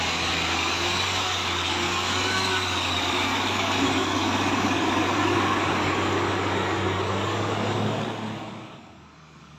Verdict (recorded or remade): remade